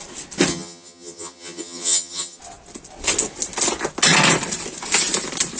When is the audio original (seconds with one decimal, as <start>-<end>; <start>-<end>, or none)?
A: 0.0-0.5; 2.4-5.6